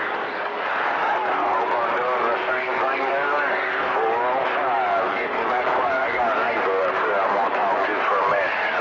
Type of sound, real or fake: fake